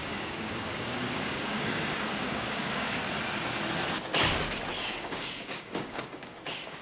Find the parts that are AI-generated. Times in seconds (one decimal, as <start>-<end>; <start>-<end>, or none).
0.0-3.0; 4.8-6.8